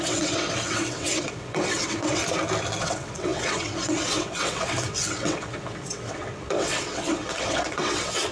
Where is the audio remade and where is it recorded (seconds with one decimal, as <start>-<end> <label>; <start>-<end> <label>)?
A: 0.0-2.2 remade; 2.2-2.8 recorded; 2.8-8.3 remade